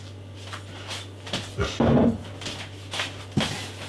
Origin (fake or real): real